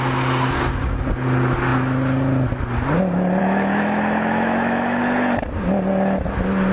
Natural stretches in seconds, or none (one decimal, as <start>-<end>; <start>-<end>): 0.0-3.4; 5.0-6.7